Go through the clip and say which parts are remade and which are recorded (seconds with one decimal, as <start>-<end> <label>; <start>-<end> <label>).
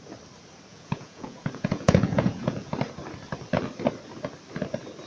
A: 0.0-0.7 recorded; 0.7-2.7 remade; 2.7-5.1 recorded